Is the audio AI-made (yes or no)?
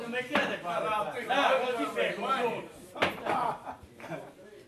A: yes